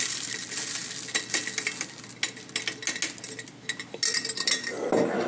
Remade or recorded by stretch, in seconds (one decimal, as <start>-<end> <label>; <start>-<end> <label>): 0.0-5.3 recorded